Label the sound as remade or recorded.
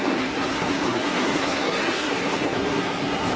remade